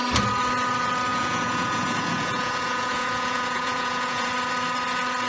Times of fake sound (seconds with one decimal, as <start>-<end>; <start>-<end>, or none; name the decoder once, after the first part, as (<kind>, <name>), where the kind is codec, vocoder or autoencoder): 1.1-4.3 (vocoder, Vocos)